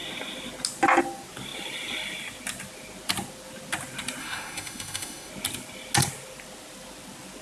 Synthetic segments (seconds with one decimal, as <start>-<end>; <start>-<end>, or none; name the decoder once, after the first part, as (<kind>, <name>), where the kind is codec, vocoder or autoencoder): 4.2-5.3 (autoencoder, DAC-VAE)